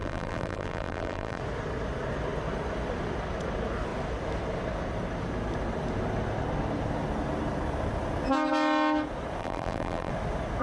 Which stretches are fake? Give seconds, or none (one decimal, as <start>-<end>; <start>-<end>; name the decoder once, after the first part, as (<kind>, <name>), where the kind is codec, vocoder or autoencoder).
0.0-1.4 (vocoder, BigVGAN v2); 9.4-10.1